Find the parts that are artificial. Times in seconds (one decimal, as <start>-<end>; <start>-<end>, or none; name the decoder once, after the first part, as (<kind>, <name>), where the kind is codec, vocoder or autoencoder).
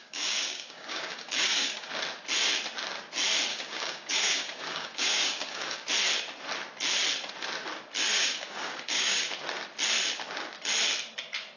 0.0-1.9 (codec, DAC); 3.5-5.9; 8.0-9.3